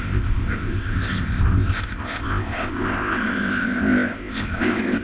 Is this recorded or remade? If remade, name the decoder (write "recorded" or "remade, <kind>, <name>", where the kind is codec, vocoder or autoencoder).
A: remade, codec, ZipCodec